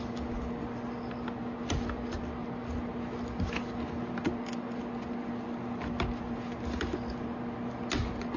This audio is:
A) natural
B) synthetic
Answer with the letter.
A